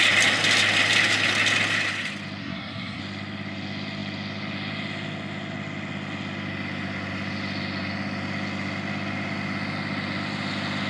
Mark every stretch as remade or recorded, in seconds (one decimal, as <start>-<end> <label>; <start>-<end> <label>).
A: 0.0-2.4 recorded; 2.4-3.0 remade; 3.0-10.9 recorded